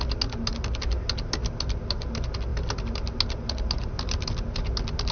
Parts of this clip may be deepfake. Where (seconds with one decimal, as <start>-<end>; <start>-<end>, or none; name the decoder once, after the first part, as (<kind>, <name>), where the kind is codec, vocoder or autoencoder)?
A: none